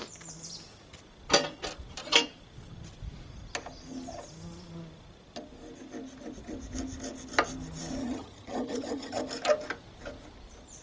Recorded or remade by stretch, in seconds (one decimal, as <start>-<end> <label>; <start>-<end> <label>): 0.0-8.0 recorded; 8.0-9.2 remade; 9.2-10.8 recorded